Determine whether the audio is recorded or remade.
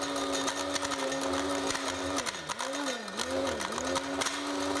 recorded